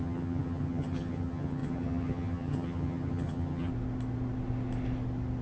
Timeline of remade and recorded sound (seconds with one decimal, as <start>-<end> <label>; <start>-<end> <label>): 0.0-3.7 remade; 3.7-5.4 recorded